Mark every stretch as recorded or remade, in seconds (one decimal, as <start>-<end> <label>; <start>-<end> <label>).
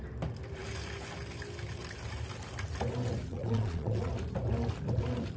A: 0.0-3.3 recorded; 3.3-4.1 remade; 4.1-5.4 recorded